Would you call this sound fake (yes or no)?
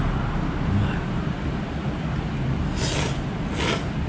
no